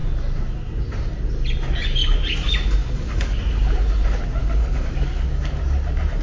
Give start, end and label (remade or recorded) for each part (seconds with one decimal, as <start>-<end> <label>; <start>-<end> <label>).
0.0-2.8 recorded; 2.8-3.4 remade; 3.4-4.4 recorded; 4.4-5.6 remade; 5.6-6.2 recorded